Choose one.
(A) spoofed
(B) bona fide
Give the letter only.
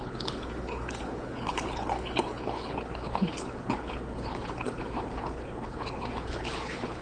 A